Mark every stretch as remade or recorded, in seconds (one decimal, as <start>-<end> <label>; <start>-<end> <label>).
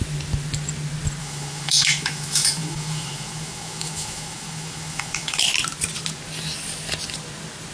0.0-1.2 recorded; 1.2-5.4 remade; 5.4-7.7 recorded